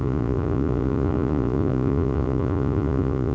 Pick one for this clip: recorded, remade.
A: remade